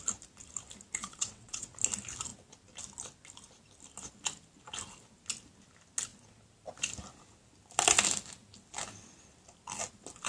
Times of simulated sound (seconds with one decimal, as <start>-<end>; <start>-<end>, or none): 1.0-1.7